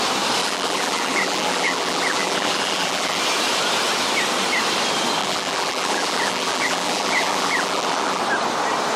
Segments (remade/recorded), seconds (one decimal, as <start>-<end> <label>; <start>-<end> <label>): 0.0-0.4 recorded; 0.4-3.2 remade; 3.2-5.2 recorded; 5.2-8.2 remade; 8.2-9.0 recorded